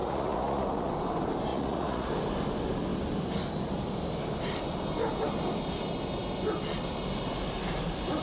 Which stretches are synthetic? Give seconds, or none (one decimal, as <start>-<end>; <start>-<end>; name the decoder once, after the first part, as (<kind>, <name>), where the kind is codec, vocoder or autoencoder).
0.0-0.9 (vocoder, Vocos); 1.5-2.1

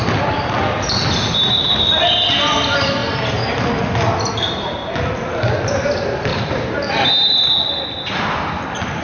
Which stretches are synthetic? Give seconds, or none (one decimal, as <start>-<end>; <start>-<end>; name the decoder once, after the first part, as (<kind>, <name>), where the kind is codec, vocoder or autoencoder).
6.3-6.9 (vocoder, BigVGAN v2)